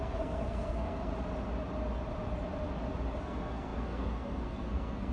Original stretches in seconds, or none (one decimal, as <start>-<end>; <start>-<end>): 1.1-3.2